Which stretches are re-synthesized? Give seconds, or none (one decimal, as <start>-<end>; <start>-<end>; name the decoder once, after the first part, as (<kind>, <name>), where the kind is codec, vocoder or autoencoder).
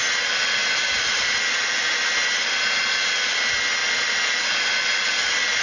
0.6-1.8 (vocoder, BigVGAN v2); 3.8-5.6